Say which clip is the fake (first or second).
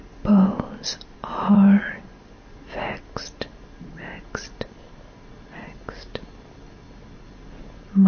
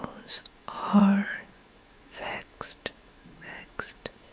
second